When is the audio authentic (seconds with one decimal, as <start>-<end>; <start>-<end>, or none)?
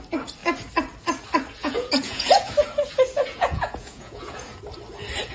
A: 0.0-1.6; 2.5-3.3; 4.6-5.3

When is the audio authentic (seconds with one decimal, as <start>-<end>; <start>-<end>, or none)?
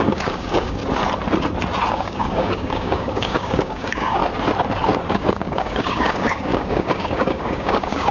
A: 0.8-1.9; 4.2-5.1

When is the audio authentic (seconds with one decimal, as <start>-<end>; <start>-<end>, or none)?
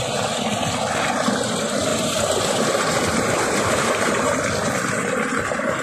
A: 0.0-1.9; 4.1-5.8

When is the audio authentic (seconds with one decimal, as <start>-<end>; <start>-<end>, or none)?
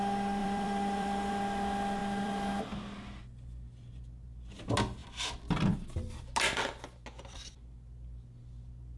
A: 0.0-0.4; 1.3-2.0; 3.2-5.0; 6.2-9.0